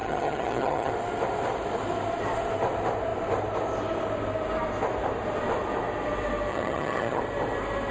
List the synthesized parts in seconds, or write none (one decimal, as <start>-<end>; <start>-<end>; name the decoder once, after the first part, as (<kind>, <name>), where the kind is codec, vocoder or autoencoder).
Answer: 0.0-0.9 (vocoder, HiFi-GAN); 6.5-7.2